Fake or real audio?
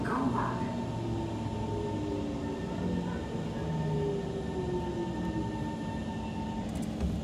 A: real